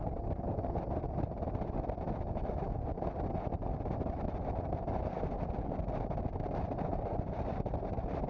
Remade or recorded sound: recorded